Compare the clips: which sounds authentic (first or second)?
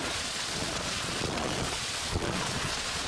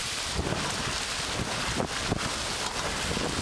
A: second